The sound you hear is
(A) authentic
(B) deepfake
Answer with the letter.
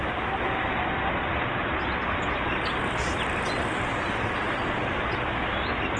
A